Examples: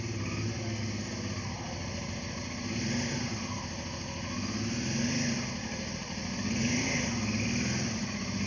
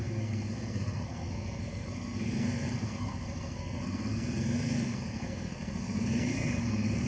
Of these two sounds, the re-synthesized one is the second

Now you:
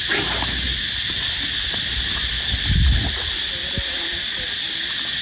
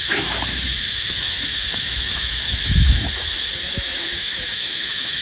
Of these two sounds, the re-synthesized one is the second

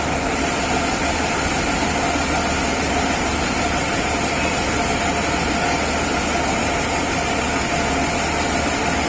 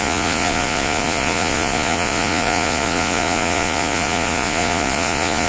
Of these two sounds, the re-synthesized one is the second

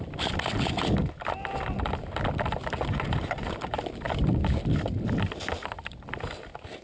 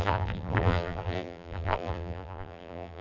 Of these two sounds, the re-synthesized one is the second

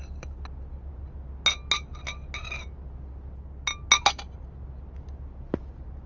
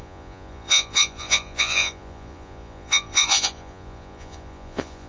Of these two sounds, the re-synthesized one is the second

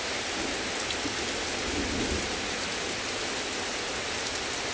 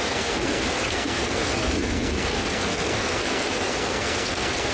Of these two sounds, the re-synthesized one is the second